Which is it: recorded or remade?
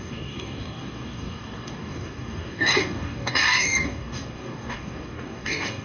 remade